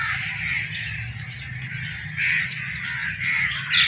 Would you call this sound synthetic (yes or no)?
no